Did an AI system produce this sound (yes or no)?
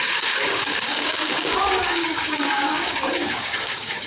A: yes